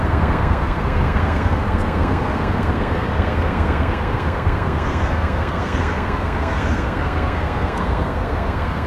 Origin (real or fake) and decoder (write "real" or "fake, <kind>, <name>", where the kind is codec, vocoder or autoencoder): fake, codec, SNAC